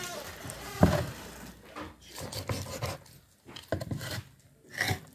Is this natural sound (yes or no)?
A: yes